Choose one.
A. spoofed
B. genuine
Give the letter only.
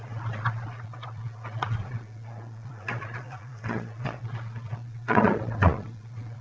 A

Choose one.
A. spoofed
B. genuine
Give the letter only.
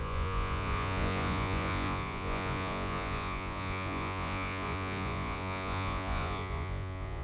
A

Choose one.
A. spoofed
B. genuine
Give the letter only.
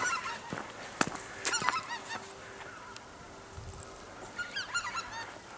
B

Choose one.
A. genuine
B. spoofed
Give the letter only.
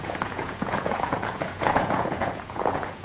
B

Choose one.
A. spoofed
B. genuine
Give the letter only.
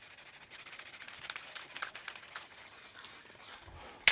B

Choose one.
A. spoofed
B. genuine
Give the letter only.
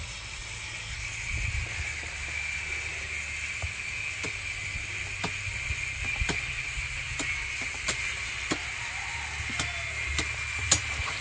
B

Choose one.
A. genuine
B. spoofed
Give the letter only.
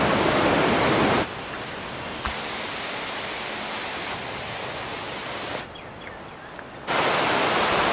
A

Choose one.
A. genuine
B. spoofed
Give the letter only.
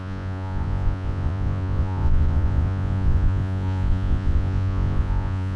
B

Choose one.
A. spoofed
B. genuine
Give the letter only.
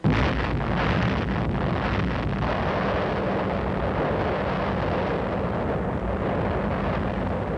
B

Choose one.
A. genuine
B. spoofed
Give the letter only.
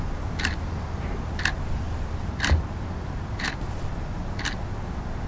A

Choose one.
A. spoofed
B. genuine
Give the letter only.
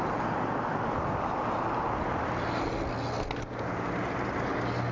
B